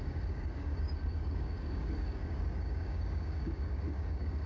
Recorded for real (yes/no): no